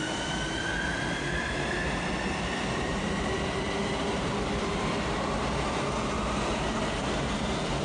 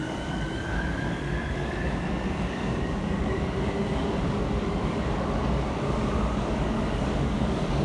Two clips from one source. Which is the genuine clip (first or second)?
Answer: first